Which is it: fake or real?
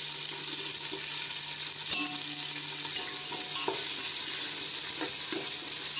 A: real